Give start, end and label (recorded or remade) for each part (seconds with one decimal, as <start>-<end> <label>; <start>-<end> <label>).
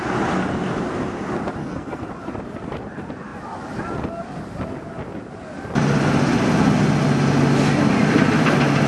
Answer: 0.0-1.6 recorded; 1.6-2.1 remade; 2.1-8.9 recorded